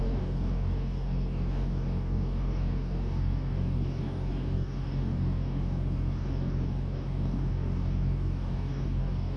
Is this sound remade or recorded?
remade